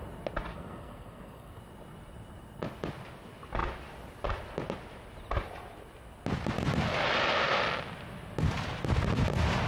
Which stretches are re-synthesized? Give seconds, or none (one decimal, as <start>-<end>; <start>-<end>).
0.5-1.6

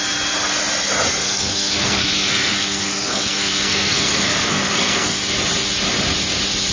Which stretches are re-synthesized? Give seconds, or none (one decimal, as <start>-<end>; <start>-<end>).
1.2-5.2

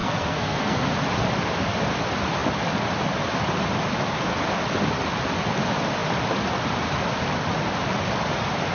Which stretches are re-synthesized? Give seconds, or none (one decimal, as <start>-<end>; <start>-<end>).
0.0-0.9

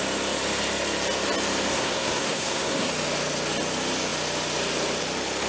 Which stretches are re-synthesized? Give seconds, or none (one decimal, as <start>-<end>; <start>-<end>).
1.7-2.9

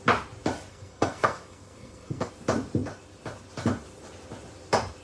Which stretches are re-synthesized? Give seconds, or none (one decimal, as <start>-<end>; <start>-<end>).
0.7-2.3

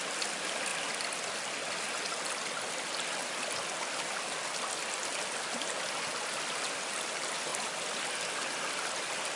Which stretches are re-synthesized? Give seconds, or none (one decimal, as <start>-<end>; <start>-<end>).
none

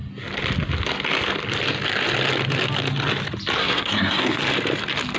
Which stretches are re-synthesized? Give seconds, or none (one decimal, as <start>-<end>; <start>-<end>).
3.6-4.4